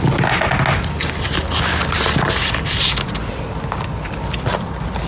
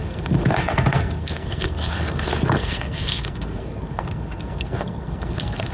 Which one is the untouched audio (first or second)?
first